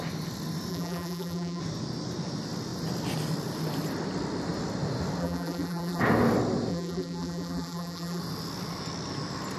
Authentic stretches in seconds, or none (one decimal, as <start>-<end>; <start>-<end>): 0.0-0.7; 1.6-5.2; 6.0-6.7; 8.2-9.6

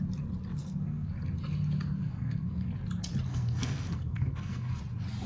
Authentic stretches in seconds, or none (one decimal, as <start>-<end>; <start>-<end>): 0.0-0.6; 1.1-2.0; 2.7-3.3; 4.8-5.3

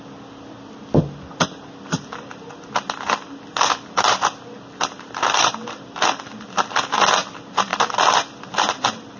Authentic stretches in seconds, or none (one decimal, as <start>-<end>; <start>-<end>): 0.0-9.2